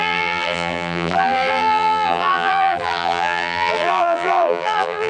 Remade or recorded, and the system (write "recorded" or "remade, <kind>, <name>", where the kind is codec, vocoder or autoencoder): remade, vocoder, BigVGAN v2